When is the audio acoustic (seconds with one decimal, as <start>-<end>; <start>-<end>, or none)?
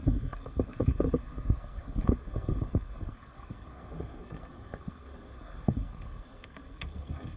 none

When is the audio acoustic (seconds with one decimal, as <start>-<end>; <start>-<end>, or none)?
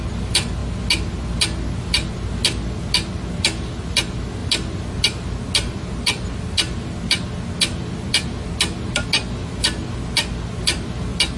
0.0-11.4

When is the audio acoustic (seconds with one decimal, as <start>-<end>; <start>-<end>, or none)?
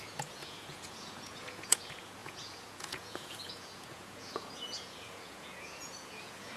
none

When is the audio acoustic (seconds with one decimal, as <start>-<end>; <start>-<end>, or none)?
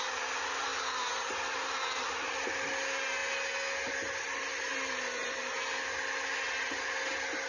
0.0-7.5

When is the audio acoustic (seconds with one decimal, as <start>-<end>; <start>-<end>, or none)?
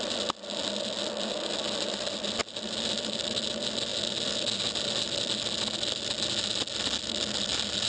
0.0-7.9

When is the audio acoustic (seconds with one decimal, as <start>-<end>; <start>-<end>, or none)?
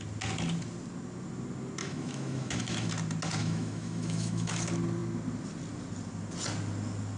0.0-1.8; 2.9-3.4; 4.5-7.2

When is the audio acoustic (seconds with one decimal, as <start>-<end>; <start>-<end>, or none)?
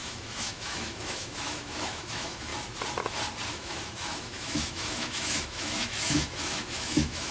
2.5-3.5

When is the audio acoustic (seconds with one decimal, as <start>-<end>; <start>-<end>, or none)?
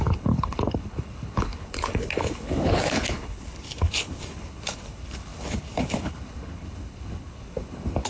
none